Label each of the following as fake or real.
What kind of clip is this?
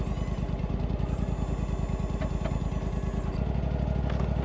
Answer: real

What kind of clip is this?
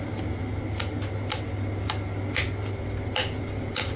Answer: real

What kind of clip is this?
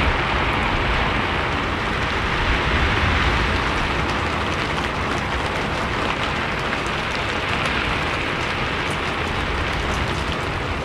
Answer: real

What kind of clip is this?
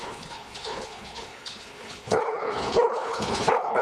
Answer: fake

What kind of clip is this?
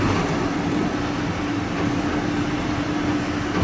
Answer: real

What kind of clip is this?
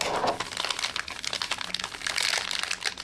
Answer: real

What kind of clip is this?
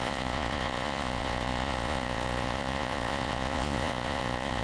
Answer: fake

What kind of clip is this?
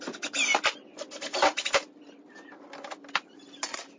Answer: real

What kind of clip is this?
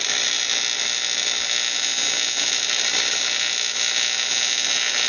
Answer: real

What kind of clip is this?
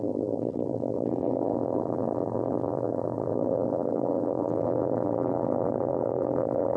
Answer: fake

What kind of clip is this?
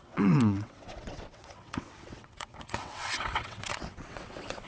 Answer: fake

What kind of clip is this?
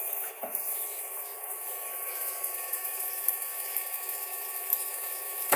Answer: fake